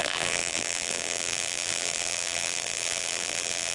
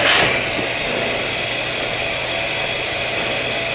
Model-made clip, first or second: first